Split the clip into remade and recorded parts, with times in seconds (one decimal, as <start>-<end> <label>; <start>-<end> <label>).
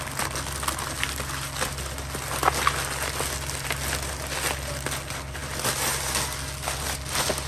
0.0-7.5 recorded